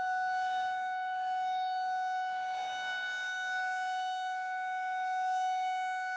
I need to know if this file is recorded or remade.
remade